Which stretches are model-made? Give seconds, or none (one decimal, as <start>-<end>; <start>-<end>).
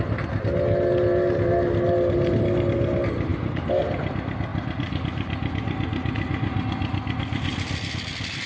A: none